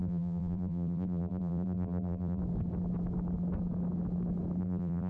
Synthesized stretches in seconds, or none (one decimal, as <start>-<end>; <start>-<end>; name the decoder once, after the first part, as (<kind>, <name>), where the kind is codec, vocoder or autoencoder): 0.0-2.4 (vocoder, BigVGAN v2); 4.6-5.1